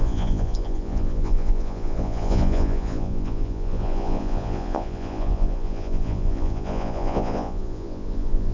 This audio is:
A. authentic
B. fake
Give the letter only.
B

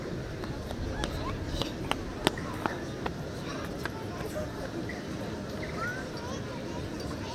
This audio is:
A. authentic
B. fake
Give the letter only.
A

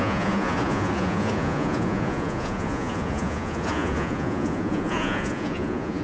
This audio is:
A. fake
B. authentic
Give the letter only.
A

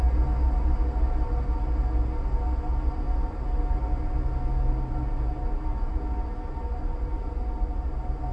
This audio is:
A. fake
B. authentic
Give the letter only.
B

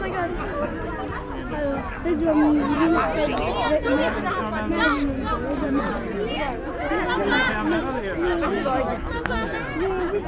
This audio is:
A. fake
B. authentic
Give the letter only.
B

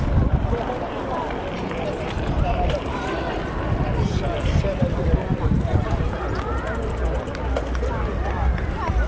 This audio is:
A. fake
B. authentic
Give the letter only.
B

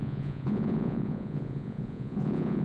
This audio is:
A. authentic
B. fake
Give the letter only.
B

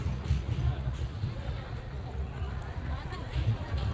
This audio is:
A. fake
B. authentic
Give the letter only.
A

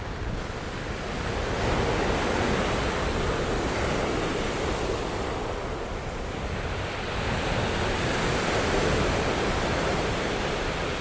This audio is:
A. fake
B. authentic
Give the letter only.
B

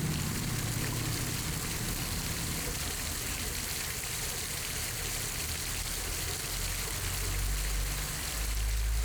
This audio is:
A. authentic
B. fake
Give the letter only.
A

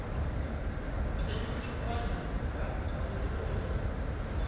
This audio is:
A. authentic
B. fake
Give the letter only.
A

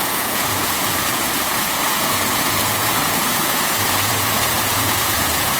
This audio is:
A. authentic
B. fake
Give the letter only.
B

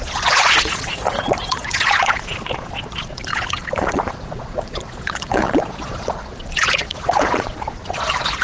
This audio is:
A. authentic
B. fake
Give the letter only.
B